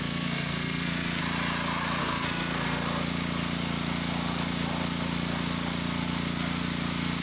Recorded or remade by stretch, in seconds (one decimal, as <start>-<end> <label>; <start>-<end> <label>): 0.0-1.2 remade; 1.2-2.0 recorded; 2.0-2.8 remade; 2.8-7.2 recorded